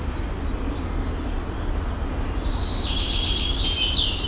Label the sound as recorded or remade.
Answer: recorded